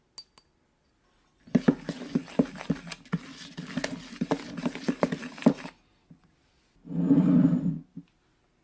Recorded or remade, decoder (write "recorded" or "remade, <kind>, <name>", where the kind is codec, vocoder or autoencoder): recorded